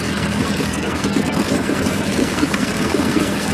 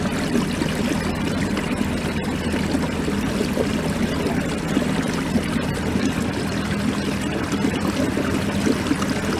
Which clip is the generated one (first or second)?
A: first